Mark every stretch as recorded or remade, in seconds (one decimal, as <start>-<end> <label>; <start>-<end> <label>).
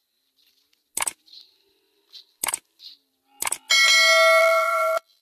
0.0-4.4 recorded; 4.4-5.2 remade